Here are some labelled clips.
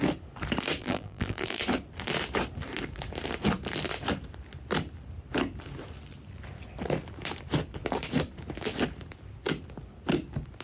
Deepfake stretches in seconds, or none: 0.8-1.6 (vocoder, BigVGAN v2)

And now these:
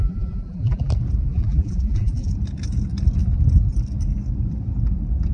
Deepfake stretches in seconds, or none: 0.0-0.9 (vocoder, BigVGAN v2); 1.3-2.3